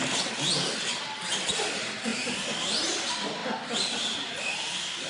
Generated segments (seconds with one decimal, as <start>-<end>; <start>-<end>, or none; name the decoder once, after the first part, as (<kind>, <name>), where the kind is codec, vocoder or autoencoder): none